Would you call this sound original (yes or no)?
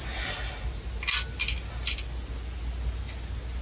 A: yes